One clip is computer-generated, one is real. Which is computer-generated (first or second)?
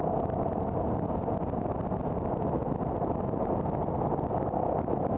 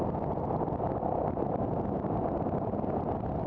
second